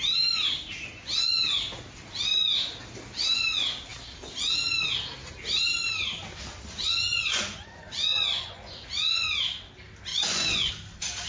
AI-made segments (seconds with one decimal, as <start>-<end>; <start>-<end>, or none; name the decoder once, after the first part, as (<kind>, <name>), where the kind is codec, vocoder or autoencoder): 7.1-9.3 (vocoder, Vocos); 10.1-10.7